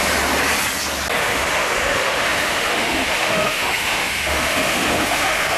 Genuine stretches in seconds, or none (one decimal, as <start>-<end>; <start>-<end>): 0.0-1.2

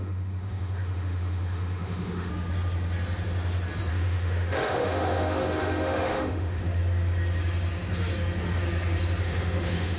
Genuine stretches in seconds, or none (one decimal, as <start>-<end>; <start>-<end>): 2.3-3.9; 6.8-9.2